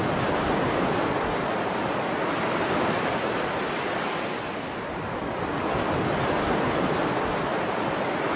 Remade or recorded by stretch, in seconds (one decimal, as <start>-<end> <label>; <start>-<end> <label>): 0.0-8.4 recorded